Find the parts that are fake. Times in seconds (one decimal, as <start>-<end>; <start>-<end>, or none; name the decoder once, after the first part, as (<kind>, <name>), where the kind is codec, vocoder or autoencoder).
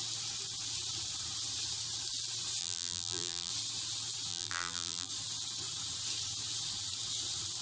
2.6-3.5 (vocoder, BigVGAN v2); 4.3-5.1